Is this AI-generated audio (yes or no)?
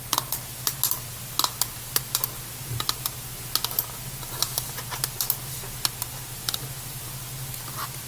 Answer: no